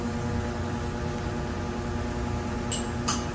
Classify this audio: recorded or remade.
recorded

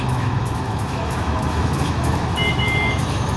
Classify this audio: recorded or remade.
remade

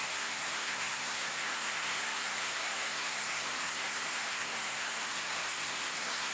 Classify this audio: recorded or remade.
remade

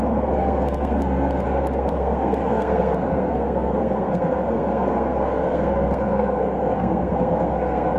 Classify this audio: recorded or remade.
remade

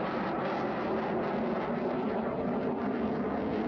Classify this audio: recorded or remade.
recorded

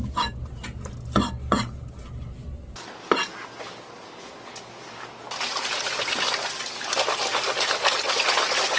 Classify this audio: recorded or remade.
recorded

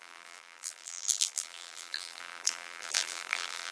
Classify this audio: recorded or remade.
remade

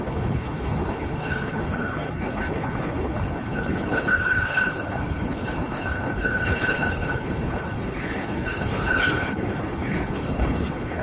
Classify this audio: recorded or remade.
remade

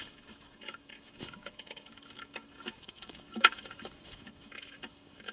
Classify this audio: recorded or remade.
remade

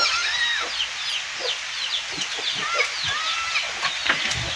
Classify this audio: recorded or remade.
recorded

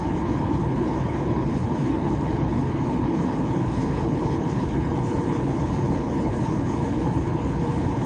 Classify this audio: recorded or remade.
remade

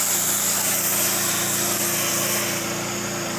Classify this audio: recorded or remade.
recorded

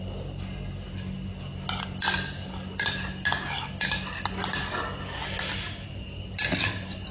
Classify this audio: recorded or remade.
recorded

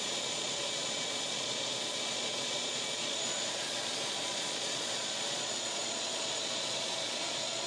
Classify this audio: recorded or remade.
remade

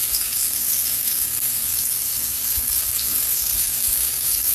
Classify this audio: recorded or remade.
remade